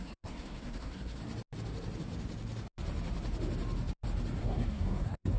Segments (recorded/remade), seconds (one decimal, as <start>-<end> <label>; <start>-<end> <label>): 0.0-1.2 remade; 1.2-4.4 recorded; 4.4-5.4 remade